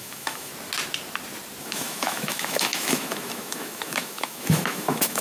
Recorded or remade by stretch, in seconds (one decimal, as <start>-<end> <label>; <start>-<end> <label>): 0.0-0.5 remade; 0.5-1.6 recorded; 1.6-5.2 remade